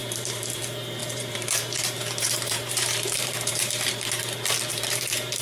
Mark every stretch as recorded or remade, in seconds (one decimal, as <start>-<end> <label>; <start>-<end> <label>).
0.0-0.6 remade; 0.6-1.0 recorded; 1.0-4.2 remade; 4.2-4.7 recorded; 4.7-5.4 remade